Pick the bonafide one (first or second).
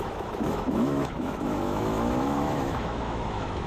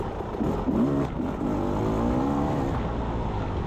second